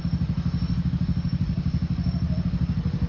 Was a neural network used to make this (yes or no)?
no